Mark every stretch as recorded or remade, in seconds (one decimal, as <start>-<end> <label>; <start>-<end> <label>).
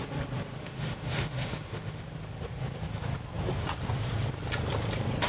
0.0-0.6 recorded; 0.6-2.0 remade; 2.0-5.3 recorded